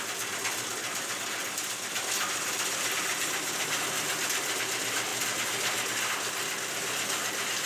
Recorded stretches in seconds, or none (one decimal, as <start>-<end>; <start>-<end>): 0.0-7.7